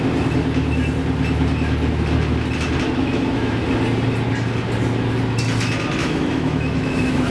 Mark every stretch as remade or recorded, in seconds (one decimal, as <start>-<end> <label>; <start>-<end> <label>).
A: 0.0-3.0 recorded; 3.0-3.6 remade; 3.6-6.0 recorded; 6.0-7.3 remade

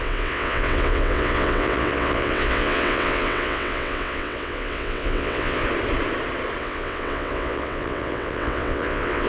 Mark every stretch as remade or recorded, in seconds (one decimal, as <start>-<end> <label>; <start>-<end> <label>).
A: 0.0-5.6 remade; 5.6-6.6 recorded; 6.6-9.3 remade

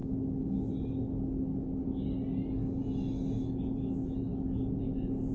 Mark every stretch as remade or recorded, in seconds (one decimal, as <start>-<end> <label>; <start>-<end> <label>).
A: 0.0-0.7 remade; 0.7-5.3 recorded

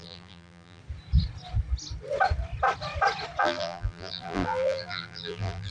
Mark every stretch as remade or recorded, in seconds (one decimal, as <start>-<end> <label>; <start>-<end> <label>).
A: 0.0-0.8 remade; 0.8-3.4 recorded; 3.4-5.7 remade

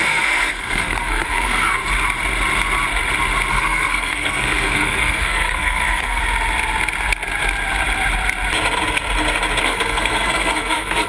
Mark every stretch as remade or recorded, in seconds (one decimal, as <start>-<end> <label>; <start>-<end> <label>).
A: 0.0-1.8 remade; 1.8-3.5 recorded; 3.5-6.2 remade; 6.2-9.6 recorded; 9.6-11.1 remade